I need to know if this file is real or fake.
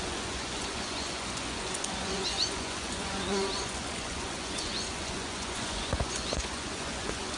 fake